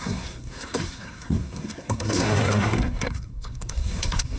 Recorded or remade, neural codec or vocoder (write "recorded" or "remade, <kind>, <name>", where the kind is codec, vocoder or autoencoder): remade, codec, SNAC